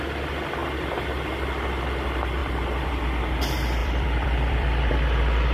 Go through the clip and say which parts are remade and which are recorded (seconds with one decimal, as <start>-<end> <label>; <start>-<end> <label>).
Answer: 0.0-2.4 recorded; 2.4-2.9 remade; 2.9-3.8 recorded; 3.8-4.9 remade; 4.9-5.5 recorded